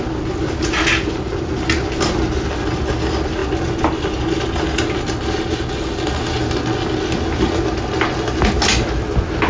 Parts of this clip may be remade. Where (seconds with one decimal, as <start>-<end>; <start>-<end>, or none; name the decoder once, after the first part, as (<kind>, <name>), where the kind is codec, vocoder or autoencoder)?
none